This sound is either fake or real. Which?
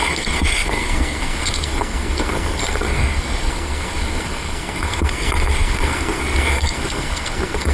fake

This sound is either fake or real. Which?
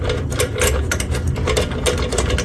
real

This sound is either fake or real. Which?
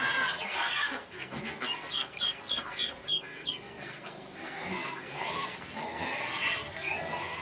fake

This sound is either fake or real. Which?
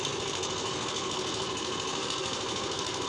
fake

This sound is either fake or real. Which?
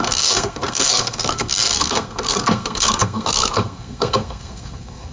fake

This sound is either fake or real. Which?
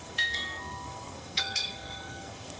fake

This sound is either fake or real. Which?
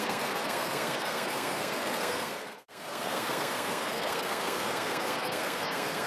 fake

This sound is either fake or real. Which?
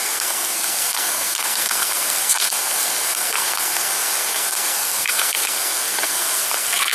fake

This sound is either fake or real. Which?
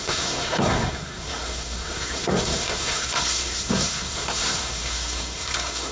fake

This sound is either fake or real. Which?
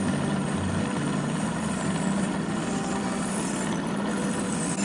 real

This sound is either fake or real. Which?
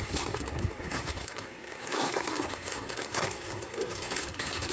fake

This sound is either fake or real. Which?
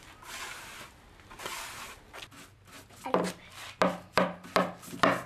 real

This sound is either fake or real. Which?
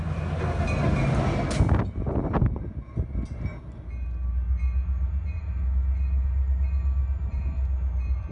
real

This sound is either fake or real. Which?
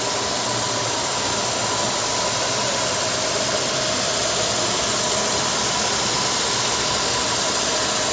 real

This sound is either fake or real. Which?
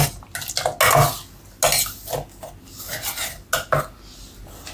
real